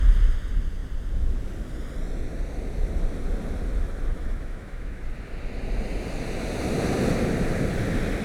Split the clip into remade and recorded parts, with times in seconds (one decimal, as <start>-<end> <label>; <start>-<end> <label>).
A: 0.0-4.1 recorded; 4.1-5.0 remade; 5.0-8.2 recorded